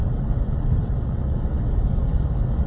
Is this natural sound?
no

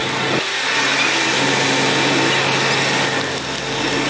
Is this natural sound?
yes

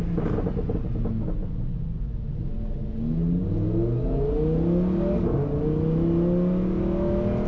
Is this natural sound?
yes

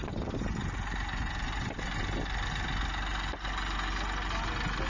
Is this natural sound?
yes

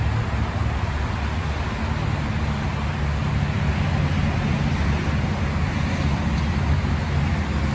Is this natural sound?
yes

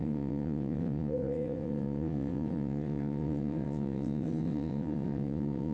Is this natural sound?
no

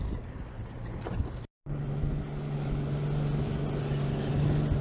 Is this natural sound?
yes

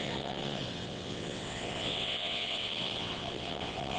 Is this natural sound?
no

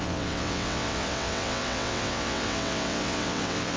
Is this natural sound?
no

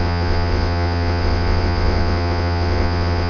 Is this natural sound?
no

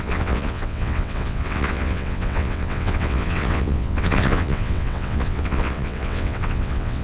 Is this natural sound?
no